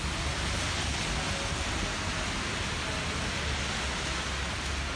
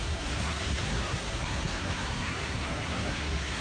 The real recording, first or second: first